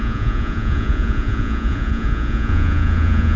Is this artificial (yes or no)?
yes